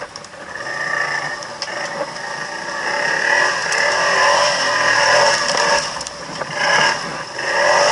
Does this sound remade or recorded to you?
recorded